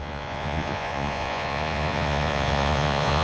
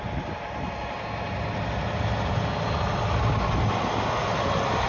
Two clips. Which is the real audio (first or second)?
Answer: second